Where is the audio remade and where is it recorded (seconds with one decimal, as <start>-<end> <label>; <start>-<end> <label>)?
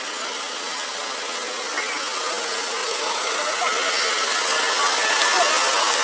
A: 0.0-2.8 recorded; 2.8-3.4 remade; 3.4-6.0 recorded